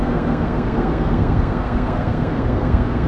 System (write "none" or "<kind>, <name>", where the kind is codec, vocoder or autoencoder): codec, SNAC